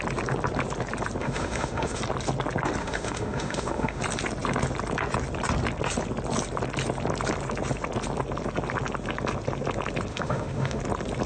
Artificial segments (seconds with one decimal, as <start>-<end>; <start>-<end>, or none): 1.2-2.0; 2.8-4.0; 10.1-10.8